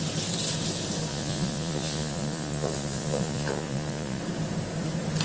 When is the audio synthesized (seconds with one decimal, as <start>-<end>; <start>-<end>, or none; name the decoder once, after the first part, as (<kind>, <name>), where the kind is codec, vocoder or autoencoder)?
1.1-4.2 (vocoder, Vocos)